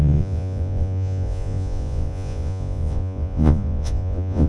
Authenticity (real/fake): fake